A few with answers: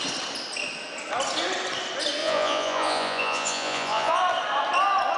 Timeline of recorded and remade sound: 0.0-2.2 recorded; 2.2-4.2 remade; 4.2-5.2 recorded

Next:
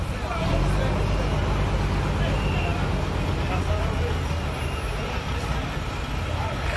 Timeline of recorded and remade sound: 0.0-6.8 recorded

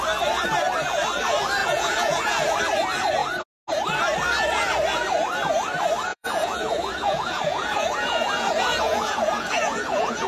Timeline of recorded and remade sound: 0.0-1.6 recorded; 1.6-2.6 remade; 2.6-6.1 recorded; 6.1-10.3 remade

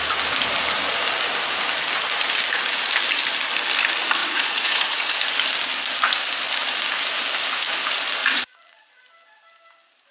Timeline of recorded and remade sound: 0.0-4.2 recorded; 4.2-5.1 remade; 5.1-8.2 recorded; 8.2-9.0 remade; 9.0-10.1 recorded

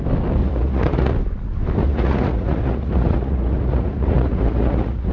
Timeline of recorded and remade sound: 0.0-0.4 recorded; 0.4-1.1 remade; 1.1-1.8 recorded; 1.8-5.1 remade

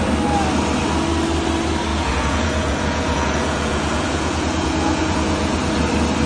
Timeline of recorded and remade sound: 0.0-1.9 recorded; 1.9-5.7 remade; 5.7-6.3 recorded

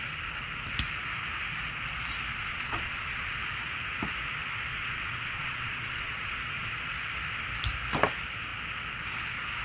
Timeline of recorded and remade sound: 0.0-2.5 recorded; 2.5-3.3 remade; 3.3-4.7 recorded; 4.7-6.7 remade; 6.7-9.6 recorded